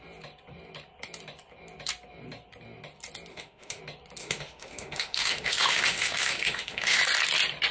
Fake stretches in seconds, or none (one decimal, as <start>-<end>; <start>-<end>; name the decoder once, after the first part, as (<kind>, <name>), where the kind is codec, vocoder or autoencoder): 3.3-3.8 (autoencoder, DAC-VAE); 4.2-7.0